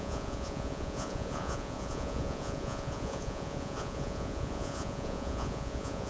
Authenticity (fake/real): fake